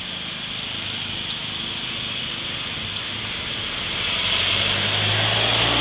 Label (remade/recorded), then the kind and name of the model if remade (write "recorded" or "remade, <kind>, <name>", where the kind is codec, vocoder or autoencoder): recorded